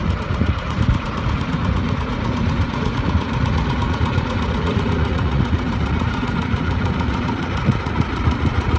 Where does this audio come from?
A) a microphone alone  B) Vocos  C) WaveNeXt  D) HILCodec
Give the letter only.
B